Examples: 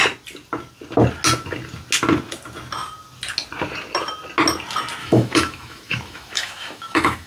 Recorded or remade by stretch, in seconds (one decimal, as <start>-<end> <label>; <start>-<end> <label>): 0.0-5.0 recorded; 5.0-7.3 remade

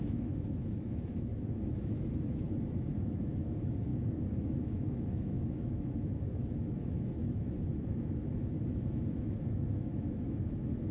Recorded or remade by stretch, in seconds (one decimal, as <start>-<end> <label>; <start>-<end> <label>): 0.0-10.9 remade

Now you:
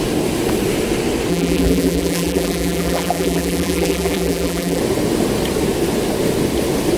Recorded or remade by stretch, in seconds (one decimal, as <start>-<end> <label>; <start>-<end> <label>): 0.0-1.3 recorded; 1.3-4.8 remade; 4.8-7.0 recorded

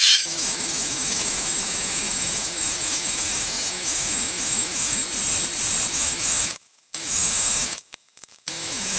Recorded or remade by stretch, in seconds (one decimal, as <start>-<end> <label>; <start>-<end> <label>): 0.0-5.0 remade; 5.0-5.9 recorded; 5.9-9.0 remade

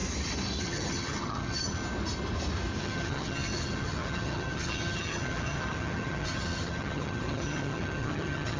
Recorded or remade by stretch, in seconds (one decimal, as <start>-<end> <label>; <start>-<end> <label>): 0.0-0.6 recorded; 0.6-1.8 remade; 1.8-2.8 recorded; 2.8-8.6 remade